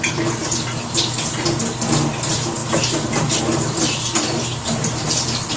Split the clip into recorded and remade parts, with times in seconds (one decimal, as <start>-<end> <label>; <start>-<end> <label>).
0.0-5.6 recorded